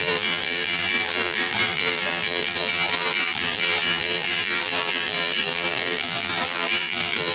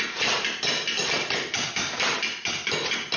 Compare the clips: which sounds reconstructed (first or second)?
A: first